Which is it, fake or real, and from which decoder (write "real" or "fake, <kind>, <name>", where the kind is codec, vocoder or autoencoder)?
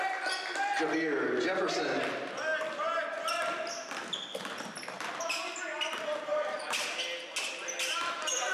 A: real